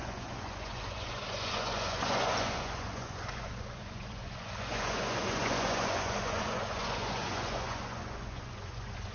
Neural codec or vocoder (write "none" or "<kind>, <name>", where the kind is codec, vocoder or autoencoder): vocoder, Vocos